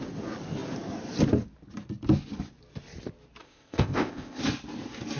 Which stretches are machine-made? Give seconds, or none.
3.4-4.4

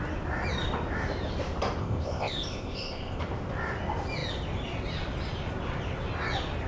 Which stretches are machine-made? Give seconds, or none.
1.8-3.2

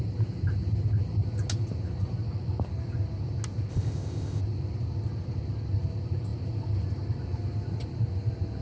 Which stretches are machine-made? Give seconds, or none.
3.7-4.4

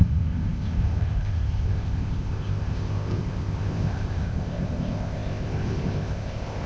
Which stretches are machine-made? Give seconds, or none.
0.0-6.7

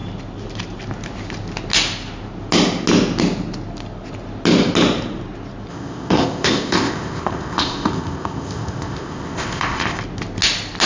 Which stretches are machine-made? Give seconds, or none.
5.7-10.0